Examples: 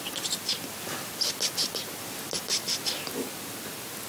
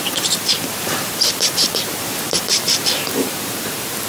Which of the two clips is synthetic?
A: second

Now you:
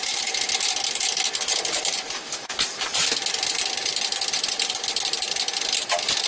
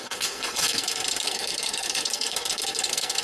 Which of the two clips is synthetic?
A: second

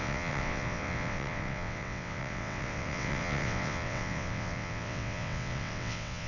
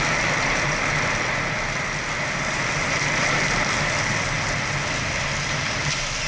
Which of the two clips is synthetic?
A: first